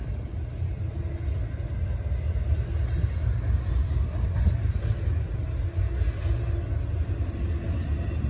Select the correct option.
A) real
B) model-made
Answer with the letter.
A